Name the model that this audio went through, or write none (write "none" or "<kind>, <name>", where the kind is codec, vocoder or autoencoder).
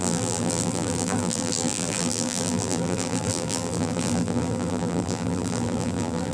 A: vocoder, BigVGAN v2